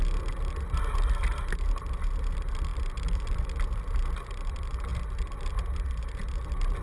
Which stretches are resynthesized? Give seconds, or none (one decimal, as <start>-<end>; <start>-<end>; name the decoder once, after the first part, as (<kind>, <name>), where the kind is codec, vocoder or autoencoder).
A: none